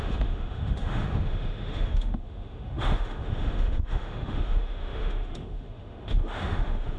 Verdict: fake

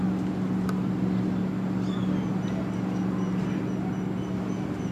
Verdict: real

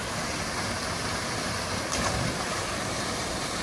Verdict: real